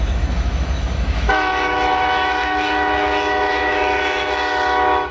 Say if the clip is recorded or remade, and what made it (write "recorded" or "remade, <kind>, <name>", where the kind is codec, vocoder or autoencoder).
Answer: remade, autoencoder, DAC-VAE